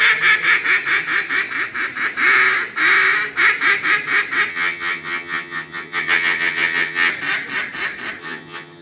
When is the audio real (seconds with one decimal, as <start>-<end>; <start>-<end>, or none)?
0.0-4.5; 7.1-8.2